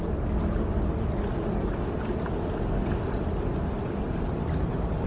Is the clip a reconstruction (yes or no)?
no